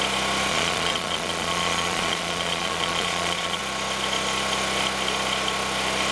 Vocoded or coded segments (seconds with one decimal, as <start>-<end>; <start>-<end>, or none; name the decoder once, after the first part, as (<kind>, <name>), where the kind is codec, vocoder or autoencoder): 0.5-3.6 (vocoder, Vocos)